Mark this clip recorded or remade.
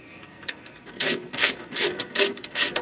remade